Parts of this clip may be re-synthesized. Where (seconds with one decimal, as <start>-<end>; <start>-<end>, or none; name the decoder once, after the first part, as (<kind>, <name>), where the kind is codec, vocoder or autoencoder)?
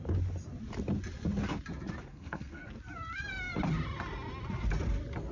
2.1-2.7 (codec, SNAC)